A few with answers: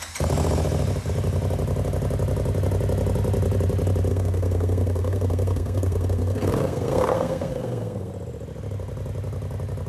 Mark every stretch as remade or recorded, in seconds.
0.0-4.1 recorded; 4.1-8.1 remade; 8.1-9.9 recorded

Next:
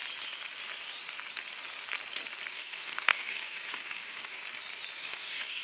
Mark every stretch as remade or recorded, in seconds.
0.0-2.5 recorded; 2.5-4.4 remade; 4.4-5.0 recorded; 5.0-5.6 remade

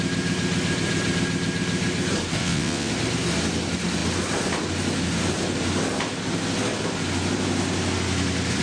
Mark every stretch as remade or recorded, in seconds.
0.0-2.4 recorded; 2.4-2.9 remade; 2.9-8.6 recorded

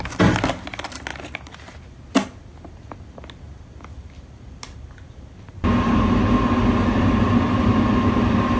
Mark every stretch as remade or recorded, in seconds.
0.0-8.6 recorded

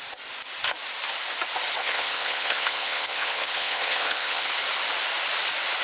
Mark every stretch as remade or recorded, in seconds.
0.0-1.8 recorded; 1.8-4.5 remade; 4.5-5.8 recorded